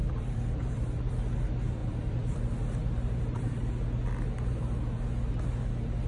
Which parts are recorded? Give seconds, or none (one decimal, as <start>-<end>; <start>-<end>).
1.1-1.8; 2.4-6.1